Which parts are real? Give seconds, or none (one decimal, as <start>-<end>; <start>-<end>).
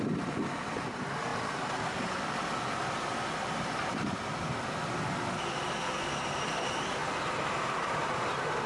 0.0-8.7